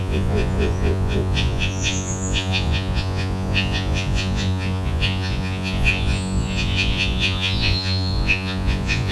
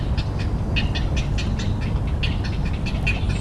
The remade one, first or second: first